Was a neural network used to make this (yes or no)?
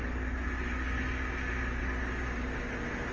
no